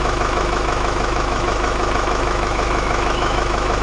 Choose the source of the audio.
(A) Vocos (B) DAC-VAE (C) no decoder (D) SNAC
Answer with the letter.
B